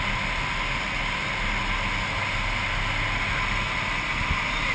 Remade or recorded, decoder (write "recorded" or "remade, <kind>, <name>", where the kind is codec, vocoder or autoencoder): recorded